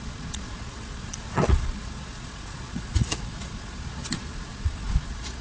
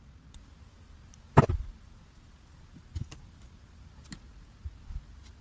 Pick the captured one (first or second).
second